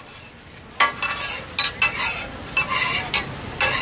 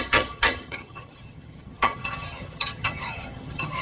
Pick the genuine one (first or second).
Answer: first